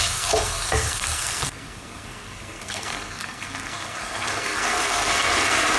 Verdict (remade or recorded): remade